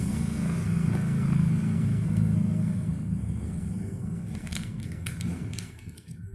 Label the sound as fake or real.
fake